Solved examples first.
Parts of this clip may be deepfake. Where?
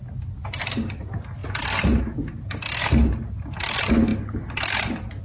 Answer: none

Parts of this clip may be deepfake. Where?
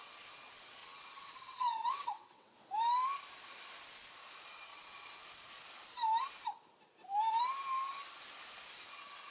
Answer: 0.8-2.7 (vocoder, WaveNeXt); 4.7-5.2